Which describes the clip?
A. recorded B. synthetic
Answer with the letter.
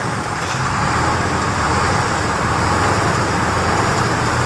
B